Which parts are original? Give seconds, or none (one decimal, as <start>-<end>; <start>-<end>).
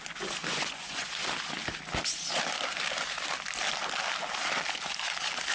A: 0.0-0.4; 1.2-5.5